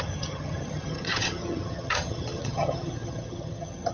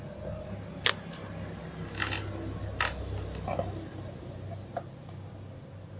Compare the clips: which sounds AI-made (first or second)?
first